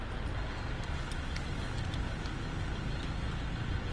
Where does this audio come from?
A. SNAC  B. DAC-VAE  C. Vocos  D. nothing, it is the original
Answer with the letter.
D